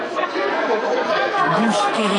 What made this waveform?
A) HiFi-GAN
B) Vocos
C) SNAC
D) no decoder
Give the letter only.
C